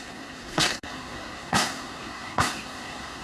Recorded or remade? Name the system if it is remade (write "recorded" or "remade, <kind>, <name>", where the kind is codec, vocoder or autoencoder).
remade, codec, SNAC